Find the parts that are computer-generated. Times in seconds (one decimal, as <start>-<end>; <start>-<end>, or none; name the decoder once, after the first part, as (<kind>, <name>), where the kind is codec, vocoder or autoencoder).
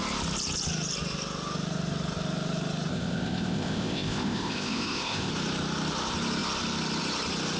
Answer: 2.9-5.3 (codec, ZipCodec)